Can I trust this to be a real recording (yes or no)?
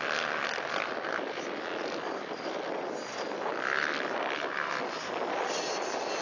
yes